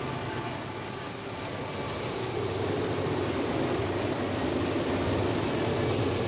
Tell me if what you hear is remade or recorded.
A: recorded